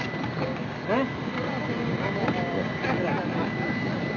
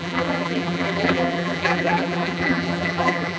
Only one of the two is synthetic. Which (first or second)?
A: second